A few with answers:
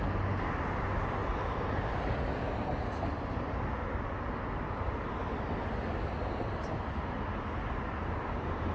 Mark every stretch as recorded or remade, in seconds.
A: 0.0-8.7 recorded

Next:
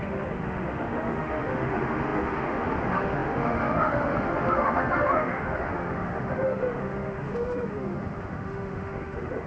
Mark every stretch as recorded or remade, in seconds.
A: 0.0-9.5 remade

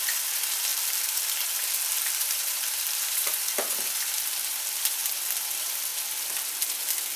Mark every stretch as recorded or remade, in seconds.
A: 0.0-0.7 remade; 0.7-2.2 recorded; 2.2-5.0 remade; 5.0-5.5 recorded; 5.5-5.9 remade; 5.9-7.2 recorded

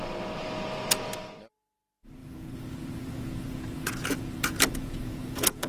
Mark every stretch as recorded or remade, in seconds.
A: 0.0-2.2 recorded; 2.2-5.7 remade

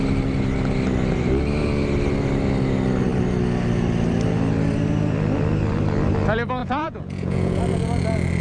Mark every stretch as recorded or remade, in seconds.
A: 0.0-6.6 recorded; 6.6-7.6 remade; 7.6-8.4 recorded

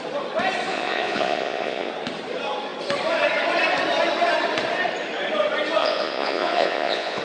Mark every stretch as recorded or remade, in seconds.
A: 0.0-0.7 recorded; 0.7-1.9 remade; 1.9-5.8 recorded; 5.8-7.2 remade

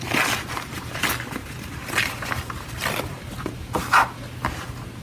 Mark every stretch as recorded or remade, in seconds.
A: 0.0-5.0 recorded

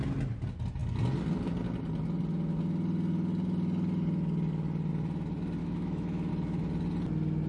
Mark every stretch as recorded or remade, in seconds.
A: 0.0-5.6 recorded; 5.6-6.3 remade; 6.3-7.5 recorded